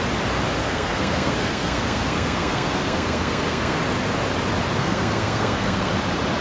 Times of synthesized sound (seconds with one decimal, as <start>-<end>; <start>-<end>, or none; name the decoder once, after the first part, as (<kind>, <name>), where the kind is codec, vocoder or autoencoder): 0.6-3.8 (codec, SNAC); 4.8-5.9